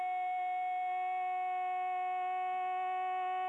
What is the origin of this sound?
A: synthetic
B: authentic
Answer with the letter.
B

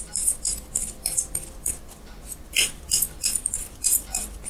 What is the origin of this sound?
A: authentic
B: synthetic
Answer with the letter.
A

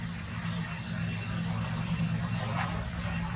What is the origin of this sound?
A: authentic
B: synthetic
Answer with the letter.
A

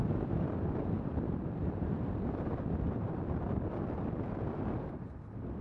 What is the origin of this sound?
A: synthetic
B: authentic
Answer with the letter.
A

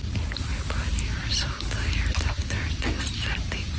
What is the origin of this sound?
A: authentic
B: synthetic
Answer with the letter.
A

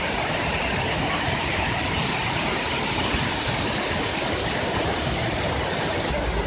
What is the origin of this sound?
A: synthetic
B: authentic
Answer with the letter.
B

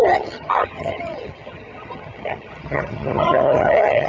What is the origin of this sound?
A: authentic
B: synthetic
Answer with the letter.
B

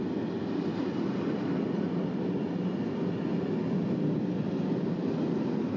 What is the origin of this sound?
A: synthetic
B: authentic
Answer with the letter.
B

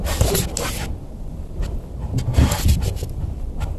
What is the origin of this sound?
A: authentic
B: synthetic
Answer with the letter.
A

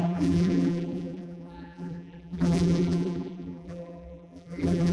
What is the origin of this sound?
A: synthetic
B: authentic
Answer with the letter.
A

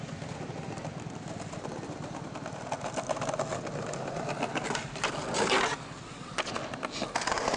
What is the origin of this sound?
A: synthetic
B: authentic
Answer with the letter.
B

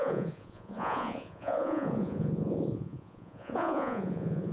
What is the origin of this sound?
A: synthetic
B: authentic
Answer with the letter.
A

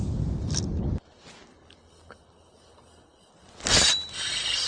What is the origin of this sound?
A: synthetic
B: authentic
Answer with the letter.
B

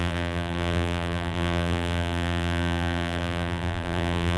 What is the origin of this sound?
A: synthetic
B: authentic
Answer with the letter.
A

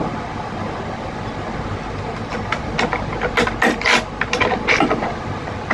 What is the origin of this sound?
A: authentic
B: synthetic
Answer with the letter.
A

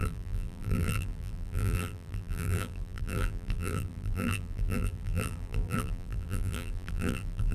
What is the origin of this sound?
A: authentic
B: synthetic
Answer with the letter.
B